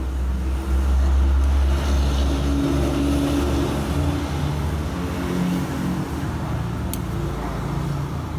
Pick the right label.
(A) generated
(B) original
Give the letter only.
B